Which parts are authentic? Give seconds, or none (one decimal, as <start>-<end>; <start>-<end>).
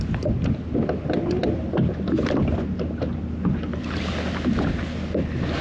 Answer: 0.0-5.6